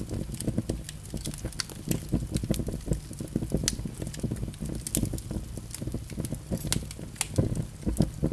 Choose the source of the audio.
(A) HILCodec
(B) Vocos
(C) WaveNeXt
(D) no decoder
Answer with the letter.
D